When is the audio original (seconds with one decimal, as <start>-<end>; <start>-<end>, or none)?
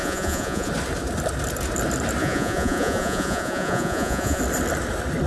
0.7-2.2; 4.4-5.3